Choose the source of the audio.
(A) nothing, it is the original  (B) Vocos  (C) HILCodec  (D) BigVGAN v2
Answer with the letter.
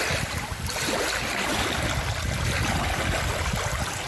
A